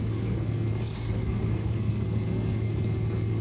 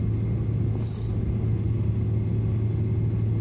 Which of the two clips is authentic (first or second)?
second